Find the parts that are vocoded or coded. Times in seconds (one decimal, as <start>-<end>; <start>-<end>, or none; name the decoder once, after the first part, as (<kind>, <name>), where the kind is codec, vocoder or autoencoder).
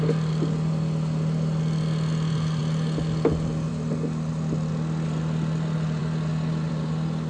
none